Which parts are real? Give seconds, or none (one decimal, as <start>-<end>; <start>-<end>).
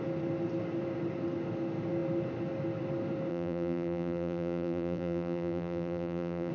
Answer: 0.0-3.3